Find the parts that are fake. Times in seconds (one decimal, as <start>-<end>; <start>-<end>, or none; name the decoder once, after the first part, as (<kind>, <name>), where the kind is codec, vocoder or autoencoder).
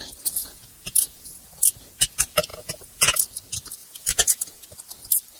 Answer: 0.4-1.4 (vocoder, Vocos); 2.5-3.2; 3.8-4.6